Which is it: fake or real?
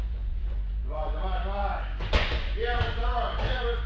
fake